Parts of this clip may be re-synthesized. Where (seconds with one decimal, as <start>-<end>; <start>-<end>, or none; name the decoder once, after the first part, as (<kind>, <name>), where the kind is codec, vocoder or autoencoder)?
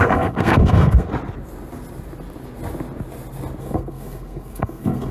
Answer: 0.0-1.1 (codec, SNAC); 3.6-5.1